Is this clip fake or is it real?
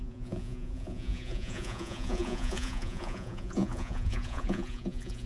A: fake